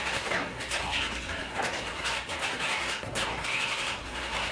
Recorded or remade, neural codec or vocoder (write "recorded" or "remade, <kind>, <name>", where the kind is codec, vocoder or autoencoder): remade, codec, SNAC